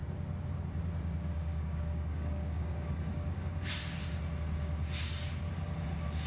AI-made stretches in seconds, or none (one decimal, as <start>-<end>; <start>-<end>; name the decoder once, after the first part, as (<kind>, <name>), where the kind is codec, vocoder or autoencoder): 1.3-3.4 (codec, DAC)